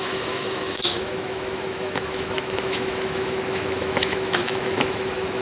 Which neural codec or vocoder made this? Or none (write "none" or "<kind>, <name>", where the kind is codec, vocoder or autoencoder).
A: autoencoder, DAC-VAE